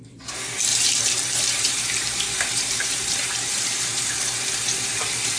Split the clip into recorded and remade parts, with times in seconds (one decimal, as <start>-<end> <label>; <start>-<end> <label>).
0.0-0.7 recorded; 0.7-3.9 remade; 3.9-5.4 recorded